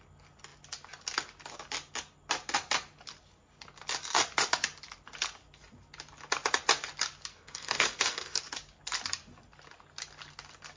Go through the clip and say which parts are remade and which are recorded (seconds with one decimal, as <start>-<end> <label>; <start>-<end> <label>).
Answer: 0.0-7.3 recorded; 7.3-8.4 remade; 8.4-10.8 recorded